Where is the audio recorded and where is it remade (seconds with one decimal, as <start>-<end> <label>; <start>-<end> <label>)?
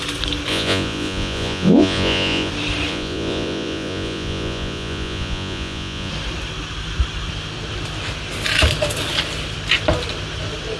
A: 0.0-0.5 recorded; 0.5-2.5 remade; 2.5-2.9 recorded; 2.9-6.1 remade; 6.1-10.8 recorded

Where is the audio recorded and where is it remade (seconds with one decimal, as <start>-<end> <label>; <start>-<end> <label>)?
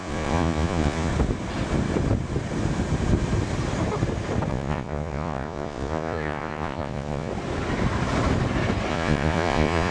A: 0.0-1.1 remade; 1.1-4.5 recorded; 4.5-7.3 remade; 7.3-8.9 recorded; 8.9-9.9 remade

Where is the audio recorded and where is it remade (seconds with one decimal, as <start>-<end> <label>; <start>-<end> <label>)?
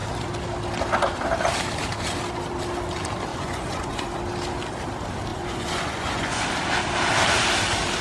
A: 0.0-3.3 recorded; 3.3-4.2 remade; 4.2-5.3 recorded; 5.3-6.4 remade; 6.4-8.0 recorded